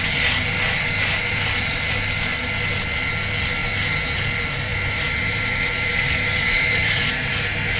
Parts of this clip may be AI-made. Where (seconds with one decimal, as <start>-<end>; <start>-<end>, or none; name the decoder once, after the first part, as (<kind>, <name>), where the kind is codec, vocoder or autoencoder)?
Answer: 1.1-1.9 (vocoder, BigVGAN v2); 3.6-4.2; 4.7-7.3